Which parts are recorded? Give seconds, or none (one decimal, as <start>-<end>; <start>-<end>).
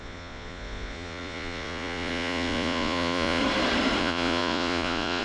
3.4-4.0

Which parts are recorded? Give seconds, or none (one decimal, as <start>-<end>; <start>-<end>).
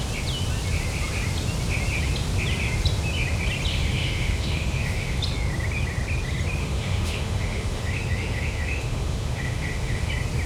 0.0-3.7; 5.2-6.6; 10.1-10.5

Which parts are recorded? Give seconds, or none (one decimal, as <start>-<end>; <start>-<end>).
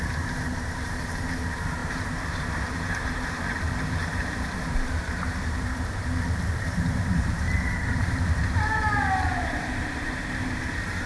none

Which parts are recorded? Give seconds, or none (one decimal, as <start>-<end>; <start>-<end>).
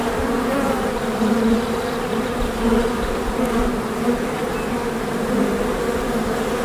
3.3-6.6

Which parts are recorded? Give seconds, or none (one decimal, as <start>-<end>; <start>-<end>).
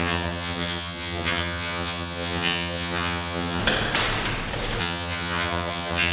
3.6-4.8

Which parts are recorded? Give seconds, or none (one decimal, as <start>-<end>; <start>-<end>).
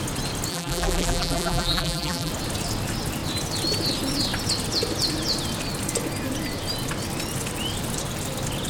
0.0-0.5; 2.3-8.7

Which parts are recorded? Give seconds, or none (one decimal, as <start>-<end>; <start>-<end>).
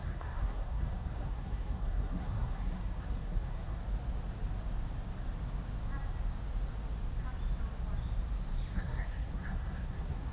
3.8-8.7